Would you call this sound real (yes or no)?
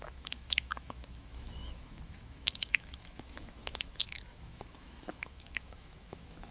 no